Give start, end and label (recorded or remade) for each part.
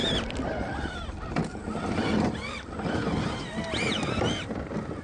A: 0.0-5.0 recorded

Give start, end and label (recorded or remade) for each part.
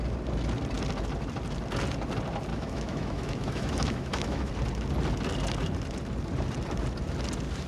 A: 0.0-2.5 recorded; 2.5-4.5 remade; 4.5-7.7 recorded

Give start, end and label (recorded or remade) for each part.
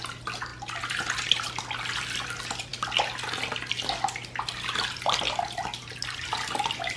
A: 0.0-7.0 recorded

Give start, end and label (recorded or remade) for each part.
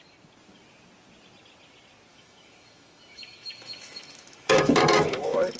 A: 0.0-2.1 recorded; 2.1-5.6 remade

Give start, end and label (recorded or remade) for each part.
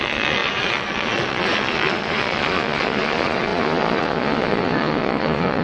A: 0.0-5.6 remade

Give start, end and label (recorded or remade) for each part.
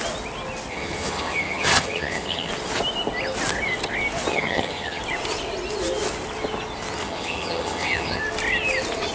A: 0.0-0.7 recorded; 0.7-2.5 remade; 2.5-4.3 recorded; 4.3-5.0 remade; 5.0-7.0 recorded; 7.0-8.2 remade; 8.2-9.1 recorded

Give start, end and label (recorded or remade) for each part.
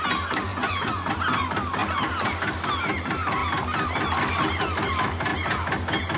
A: 0.0-0.5 recorded; 0.5-1.1 remade; 1.1-6.2 recorded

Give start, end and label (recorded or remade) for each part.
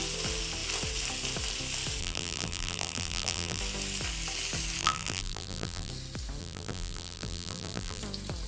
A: 0.0-2.0 recorded; 2.0-3.6 remade; 3.6-4.8 recorded; 4.8-5.9 remade; 5.9-6.4 recorded; 6.4-8.0 remade; 8.0-8.5 recorded